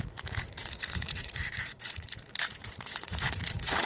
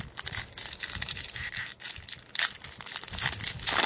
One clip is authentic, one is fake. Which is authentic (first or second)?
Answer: second